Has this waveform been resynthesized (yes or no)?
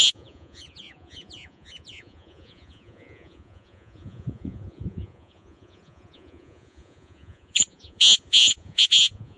yes